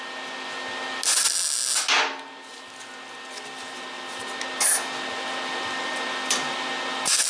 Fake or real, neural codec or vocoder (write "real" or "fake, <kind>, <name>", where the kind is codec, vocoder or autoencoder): real